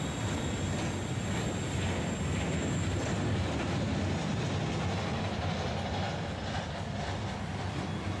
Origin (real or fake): real